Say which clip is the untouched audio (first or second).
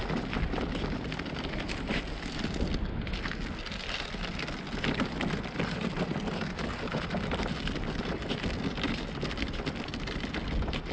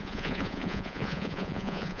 first